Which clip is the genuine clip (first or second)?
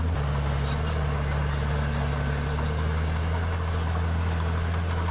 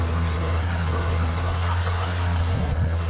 first